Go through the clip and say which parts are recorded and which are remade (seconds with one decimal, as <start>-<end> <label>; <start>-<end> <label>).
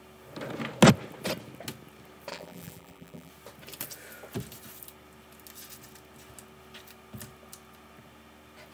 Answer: 0.0-2.3 recorded; 2.3-3.3 remade; 3.3-8.7 recorded